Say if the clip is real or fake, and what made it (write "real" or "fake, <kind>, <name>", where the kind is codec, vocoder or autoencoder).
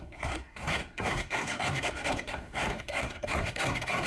fake, codec, SNAC